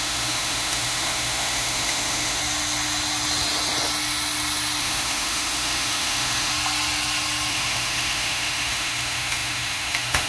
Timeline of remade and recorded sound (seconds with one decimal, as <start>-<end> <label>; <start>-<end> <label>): 0.0-2.4 remade; 2.4-4.8 recorded; 4.8-6.5 remade; 6.5-7.5 recorded; 7.5-10.3 remade